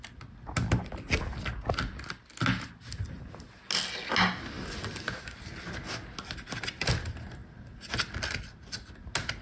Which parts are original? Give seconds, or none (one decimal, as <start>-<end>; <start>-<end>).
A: 0.0-9.4